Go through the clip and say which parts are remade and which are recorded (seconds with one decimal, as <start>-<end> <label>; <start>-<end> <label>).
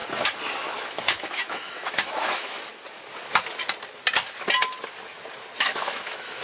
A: 0.0-0.5 recorded; 0.5-2.7 remade; 2.7-5.6 recorded; 5.6-6.4 remade